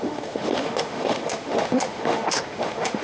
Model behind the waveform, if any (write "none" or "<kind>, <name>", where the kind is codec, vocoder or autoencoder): autoencoder, DAC-VAE